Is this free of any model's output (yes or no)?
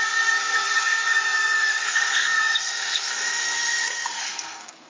no